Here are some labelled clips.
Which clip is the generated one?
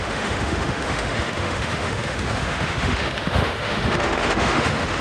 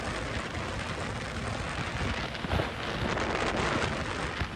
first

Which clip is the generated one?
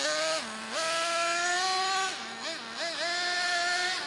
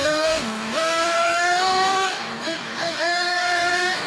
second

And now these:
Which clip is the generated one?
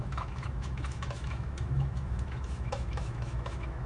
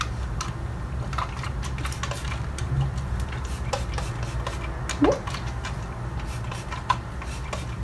first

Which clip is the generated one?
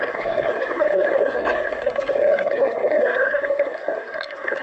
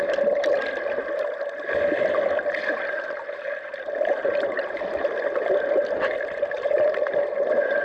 first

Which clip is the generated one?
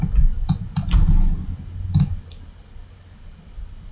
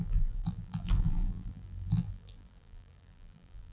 second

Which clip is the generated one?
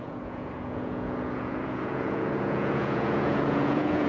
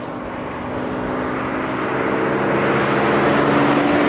first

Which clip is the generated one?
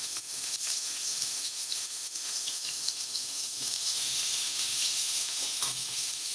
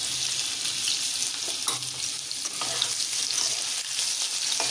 first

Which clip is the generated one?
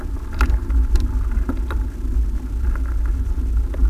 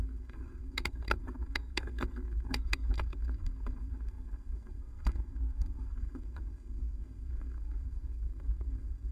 second